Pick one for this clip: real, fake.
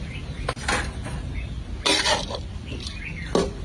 real